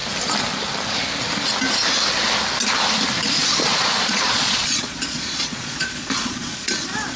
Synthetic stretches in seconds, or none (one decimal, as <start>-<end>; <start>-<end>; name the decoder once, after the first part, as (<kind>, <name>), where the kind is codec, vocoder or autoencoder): 3.4-6.7 (vocoder, Vocos)